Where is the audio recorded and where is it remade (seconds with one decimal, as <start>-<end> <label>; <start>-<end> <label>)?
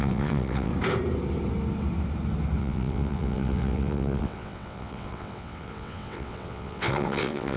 0.0-0.7 remade; 0.7-2.6 recorded; 2.6-7.6 remade